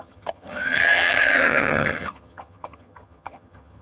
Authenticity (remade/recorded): remade